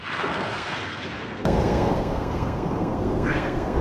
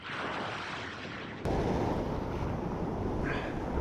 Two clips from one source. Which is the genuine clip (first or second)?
second